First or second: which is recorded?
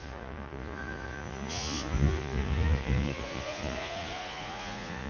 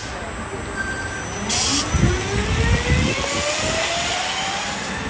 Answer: second